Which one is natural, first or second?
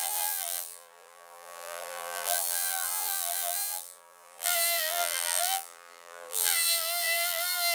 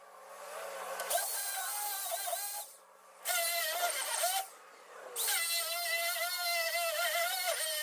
second